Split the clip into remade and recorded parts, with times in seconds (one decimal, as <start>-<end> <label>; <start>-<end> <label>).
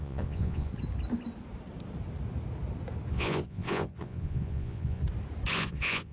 0.0-0.7 remade; 0.7-3.1 recorded; 3.1-5.0 remade; 5.0-5.5 recorded; 5.5-6.1 remade